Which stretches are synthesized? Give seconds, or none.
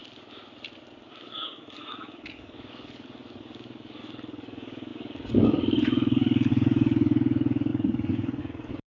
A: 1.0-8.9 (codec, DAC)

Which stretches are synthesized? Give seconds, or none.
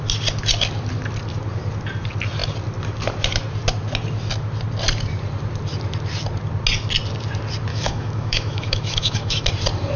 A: 7.7-9.5 (autoencoder, DAC-VAE)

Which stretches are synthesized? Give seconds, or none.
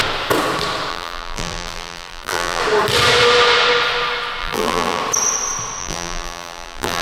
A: 0.9-2.6 (vocoder, BigVGAN v2); 4.4-5.0; 5.8-7.0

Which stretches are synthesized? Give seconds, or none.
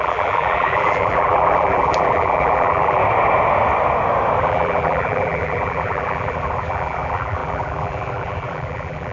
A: 0.0-3.0 (vocoder, BigVGAN v2); 4.4-9.1